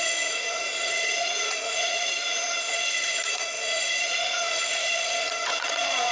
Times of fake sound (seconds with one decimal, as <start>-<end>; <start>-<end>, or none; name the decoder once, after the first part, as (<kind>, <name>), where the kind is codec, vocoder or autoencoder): 0.0-6.1 (vocoder, Vocos)